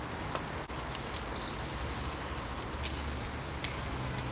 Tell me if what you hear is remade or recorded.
recorded